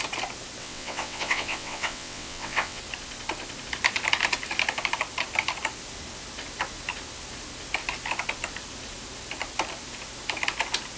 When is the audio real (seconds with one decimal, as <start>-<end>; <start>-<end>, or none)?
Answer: 0.0-0.6; 2.8-11.0